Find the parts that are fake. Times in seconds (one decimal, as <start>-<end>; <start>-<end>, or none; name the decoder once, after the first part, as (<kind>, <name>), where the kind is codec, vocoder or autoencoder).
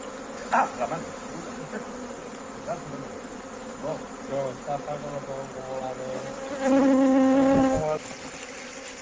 7.1-8.0 (codec, DAC)